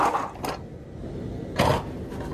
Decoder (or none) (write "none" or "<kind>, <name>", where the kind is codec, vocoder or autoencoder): none